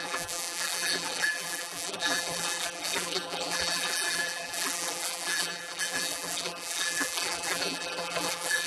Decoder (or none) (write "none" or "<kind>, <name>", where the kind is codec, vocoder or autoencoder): vocoder, BigVGAN v2